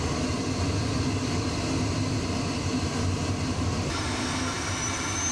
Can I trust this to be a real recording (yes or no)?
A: no